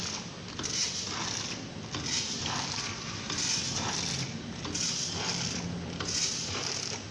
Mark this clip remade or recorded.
recorded